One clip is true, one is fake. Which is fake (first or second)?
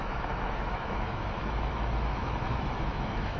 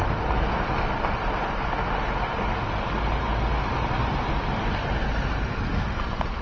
first